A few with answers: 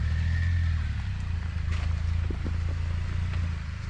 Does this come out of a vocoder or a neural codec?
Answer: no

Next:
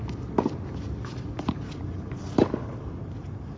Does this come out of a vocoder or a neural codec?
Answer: no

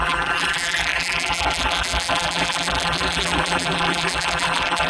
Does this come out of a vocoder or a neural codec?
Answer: yes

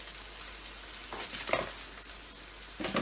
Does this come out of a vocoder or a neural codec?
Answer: no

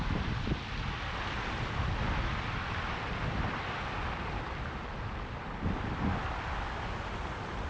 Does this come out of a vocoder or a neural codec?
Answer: no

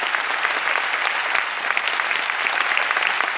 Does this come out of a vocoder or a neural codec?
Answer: no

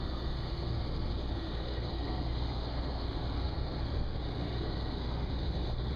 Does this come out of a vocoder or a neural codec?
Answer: yes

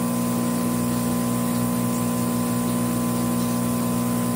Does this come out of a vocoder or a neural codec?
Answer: no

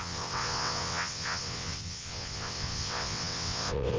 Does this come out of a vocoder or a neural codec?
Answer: yes